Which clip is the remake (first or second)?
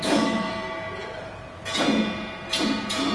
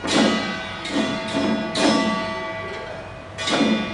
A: first